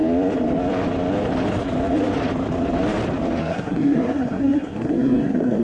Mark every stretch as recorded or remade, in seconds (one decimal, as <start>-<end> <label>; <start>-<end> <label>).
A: 0.0-3.4 recorded; 3.4-5.6 remade